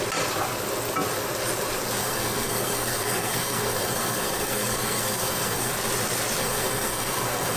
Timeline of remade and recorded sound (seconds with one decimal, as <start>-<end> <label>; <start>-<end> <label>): 0.0-2.0 recorded; 2.0-5.7 remade; 5.7-6.4 recorded; 6.4-7.6 remade